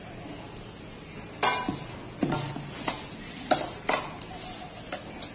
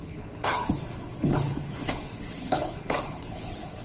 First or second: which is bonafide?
first